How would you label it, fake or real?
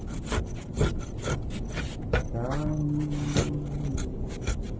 real